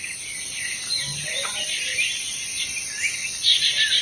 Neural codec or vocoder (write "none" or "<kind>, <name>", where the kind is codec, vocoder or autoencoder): none